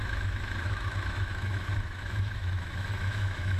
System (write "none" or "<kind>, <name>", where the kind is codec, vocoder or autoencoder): autoencoder, DAC-VAE